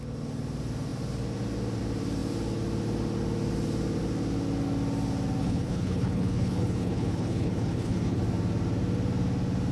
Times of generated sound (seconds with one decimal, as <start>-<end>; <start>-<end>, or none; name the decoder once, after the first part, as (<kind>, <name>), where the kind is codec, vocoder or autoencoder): 5.4-8.2 (codec, HILCodec)